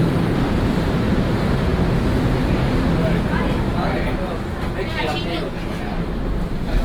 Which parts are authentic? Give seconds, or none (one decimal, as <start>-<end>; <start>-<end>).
1.7-5.8